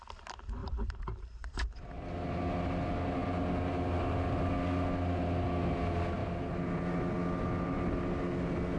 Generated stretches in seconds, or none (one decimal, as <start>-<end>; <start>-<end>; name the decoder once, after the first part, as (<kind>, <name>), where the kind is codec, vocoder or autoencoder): 0.6-1.8 (vocoder, BigVGAN v2)